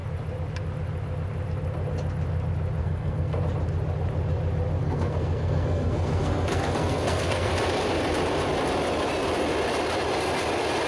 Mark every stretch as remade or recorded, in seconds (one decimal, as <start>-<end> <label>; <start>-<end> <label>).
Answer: 0.0-2.8 recorded; 2.8-3.4 remade; 3.4-4.8 recorded; 4.8-7.5 remade; 7.5-10.9 recorded